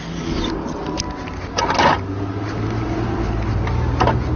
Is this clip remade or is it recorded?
recorded